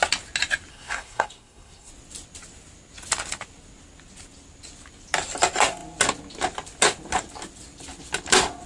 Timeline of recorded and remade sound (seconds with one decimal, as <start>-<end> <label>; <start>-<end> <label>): 0.0-0.7 recorded; 0.7-1.9 remade; 1.9-8.7 recorded